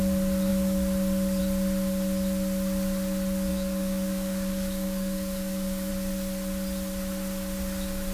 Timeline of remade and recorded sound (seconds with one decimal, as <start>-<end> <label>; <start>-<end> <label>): 0.0-3.5 recorded; 3.5-5.9 remade; 5.9-8.1 recorded